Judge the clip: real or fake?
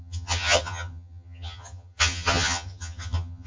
fake